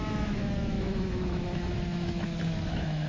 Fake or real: fake